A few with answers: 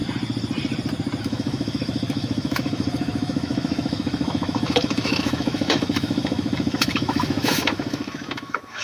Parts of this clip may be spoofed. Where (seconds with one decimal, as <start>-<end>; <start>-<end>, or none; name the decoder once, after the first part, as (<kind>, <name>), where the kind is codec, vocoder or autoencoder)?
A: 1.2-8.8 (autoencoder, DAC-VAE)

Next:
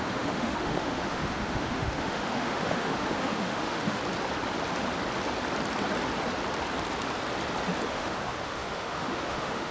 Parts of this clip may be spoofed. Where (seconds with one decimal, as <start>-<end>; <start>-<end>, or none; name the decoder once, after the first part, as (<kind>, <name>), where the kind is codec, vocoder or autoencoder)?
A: 0.0-4.0 (autoencoder, DAC-VAE); 7.9-9.7

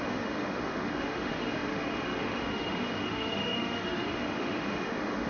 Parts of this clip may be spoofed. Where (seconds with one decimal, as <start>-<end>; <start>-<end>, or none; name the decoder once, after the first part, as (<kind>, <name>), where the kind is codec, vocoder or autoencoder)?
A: 0.0-5.3 (autoencoder, DAC-VAE)

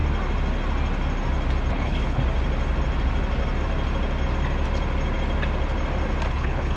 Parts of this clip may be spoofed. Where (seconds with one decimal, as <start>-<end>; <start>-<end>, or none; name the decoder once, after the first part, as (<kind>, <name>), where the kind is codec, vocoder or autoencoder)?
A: 1.7-2.2 (codec, HILCodec); 6.3-6.8